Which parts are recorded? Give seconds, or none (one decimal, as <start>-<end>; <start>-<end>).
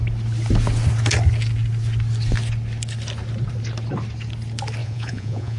0.0-4.8